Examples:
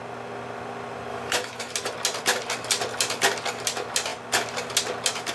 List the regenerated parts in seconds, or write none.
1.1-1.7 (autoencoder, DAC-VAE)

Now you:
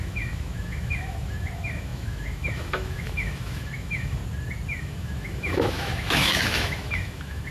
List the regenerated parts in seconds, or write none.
0.0-4.2 (autoencoder, DAC-VAE); 4.8-7.5

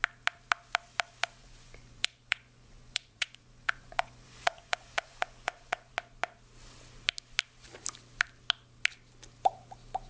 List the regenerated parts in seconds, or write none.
1.4-5.9 (vocoder, Vocos)

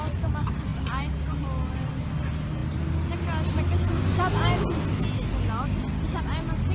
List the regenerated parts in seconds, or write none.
none

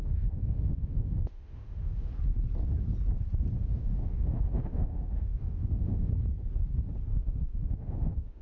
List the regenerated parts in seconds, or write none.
0.0-2.1 (autoencoder, DAC-VAE); 3.6-6.1; 7.1-8.4

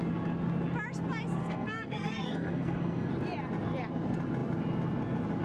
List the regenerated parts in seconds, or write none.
1.4-3.1 (codec, SNAC)

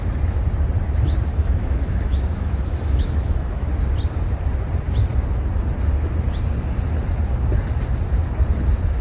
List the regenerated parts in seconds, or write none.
1.3-3.7 (autoencoder, DAC-VAE)

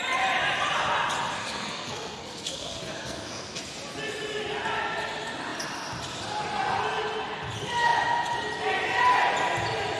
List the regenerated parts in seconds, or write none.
1.4-3.6 (codec, SNAC)